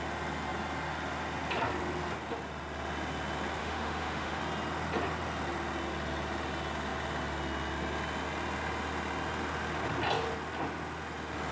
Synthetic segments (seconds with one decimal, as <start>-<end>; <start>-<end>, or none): 3.6-4.4